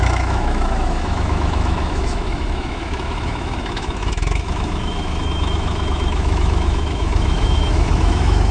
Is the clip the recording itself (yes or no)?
no